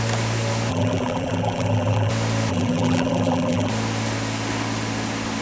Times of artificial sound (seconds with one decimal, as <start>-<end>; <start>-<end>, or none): 0.7-2.1; 2.5-3.7